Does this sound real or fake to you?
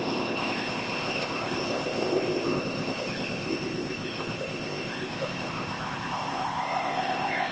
fake